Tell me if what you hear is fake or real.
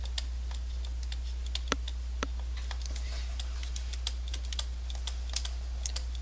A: real